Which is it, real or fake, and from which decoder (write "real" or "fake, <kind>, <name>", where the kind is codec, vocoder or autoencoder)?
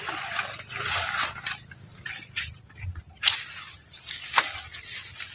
real